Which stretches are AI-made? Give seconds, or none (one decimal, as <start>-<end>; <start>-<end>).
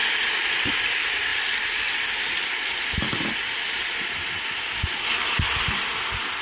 none